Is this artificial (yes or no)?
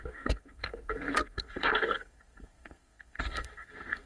yes